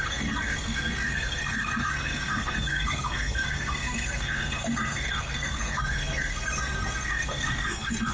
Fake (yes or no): yes